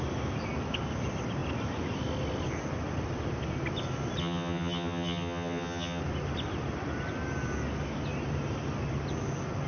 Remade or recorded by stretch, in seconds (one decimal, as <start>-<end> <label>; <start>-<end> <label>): 0.0-4.2 recorded; 4.2-6.0 remade; 6.0-9.7 recorded